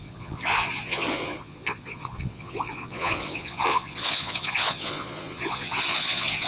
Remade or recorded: remade